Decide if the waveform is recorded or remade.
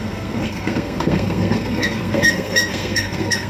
remade